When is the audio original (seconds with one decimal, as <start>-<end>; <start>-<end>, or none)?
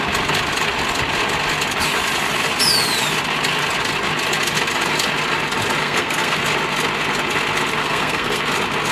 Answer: 0.0-5.8; 6.4-7.8; 8.4-8.9